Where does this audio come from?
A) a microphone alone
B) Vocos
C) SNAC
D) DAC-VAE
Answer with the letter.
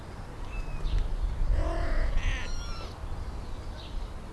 A